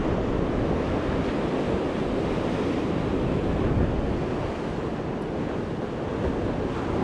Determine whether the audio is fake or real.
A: real